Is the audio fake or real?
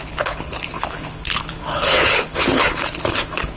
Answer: fake